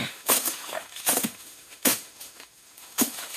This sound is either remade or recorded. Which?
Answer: remade